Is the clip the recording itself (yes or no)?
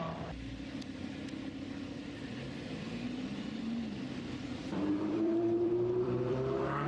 no